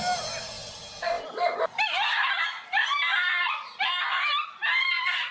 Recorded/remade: recorded